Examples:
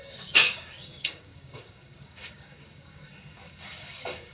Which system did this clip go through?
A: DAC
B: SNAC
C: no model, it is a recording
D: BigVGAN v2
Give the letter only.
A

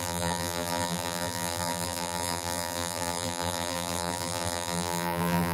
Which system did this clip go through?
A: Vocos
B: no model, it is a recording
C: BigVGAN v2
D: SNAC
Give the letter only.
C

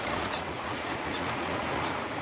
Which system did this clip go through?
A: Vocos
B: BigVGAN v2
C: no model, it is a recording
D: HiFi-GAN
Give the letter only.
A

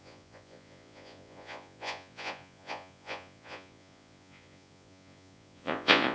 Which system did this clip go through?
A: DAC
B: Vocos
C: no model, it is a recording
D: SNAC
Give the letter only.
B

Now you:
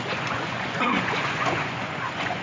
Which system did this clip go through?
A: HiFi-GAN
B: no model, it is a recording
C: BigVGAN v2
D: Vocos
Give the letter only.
D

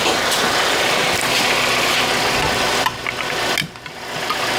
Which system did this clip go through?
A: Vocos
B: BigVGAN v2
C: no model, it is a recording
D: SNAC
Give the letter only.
C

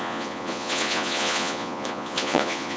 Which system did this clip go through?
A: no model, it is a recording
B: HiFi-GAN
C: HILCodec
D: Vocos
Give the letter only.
D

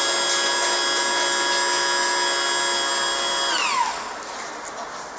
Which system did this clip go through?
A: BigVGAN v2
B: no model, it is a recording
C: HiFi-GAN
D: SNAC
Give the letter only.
B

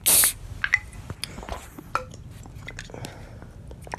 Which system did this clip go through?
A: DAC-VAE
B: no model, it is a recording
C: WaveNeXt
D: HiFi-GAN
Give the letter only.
B